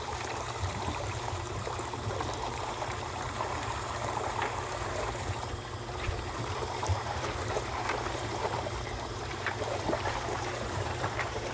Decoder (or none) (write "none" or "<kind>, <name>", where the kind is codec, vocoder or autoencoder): vocoder, BigVGAN v2